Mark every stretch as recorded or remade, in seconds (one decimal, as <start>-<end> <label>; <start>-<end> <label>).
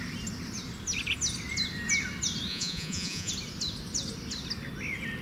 0.0-2.5 recorded; 2.5-3.3 remade; 3.3-5.2 recorded